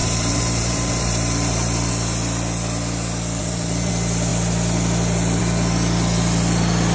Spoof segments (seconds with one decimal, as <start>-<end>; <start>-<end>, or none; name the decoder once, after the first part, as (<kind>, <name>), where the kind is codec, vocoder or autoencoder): 0.0-1.9 (vocoder, BigVGAN v2); 3.4-3.9